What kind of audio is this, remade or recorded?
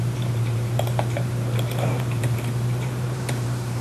remade